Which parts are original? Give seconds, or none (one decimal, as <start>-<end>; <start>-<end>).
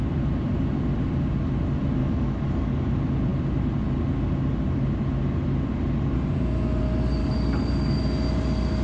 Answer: 0.0-2.0; 2.9-7.2; 8.0-8.8